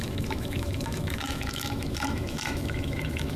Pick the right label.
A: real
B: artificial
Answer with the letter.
B